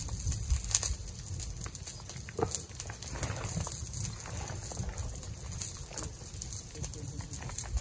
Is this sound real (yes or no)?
yes